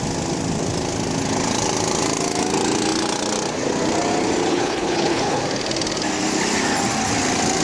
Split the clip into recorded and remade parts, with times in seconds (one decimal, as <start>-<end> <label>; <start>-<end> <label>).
0.0-4.5 recorded; 4.5-5.4 remade; 5.4-7.6 recorded